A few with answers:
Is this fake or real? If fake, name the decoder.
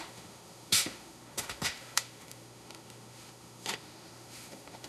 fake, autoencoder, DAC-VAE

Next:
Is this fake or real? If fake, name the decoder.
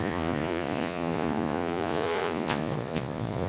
fake, vocoder, Vocos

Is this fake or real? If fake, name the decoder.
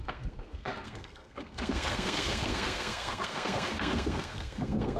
fake, codec, SNAC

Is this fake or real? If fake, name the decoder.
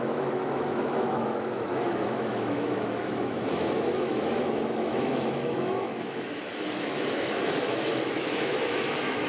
fake, autoencoder, DAC-VAE